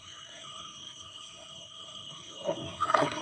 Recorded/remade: remade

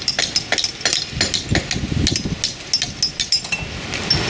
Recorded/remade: recorded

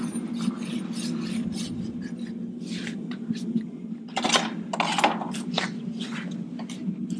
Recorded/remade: recorded